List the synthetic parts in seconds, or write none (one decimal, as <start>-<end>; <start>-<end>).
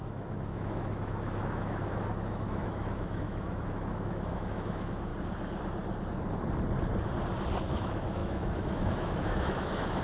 0.0-5.1; 7.6-10.0